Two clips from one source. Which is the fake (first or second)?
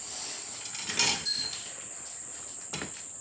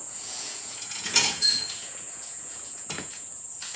second